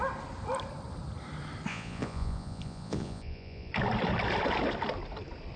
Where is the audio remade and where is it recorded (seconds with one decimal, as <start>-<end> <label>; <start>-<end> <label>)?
0.0-1.7 recorded; 1.7-3.7 remade; 3.7-5.6 recorded